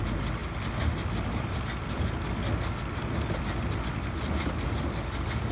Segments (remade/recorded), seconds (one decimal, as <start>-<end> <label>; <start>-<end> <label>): 0.0-5.5 recorded